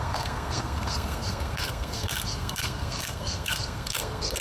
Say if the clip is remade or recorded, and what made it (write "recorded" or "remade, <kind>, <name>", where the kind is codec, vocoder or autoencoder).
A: remade, codec, SNAC